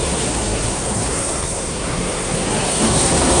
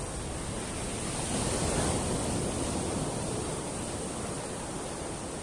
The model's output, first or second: first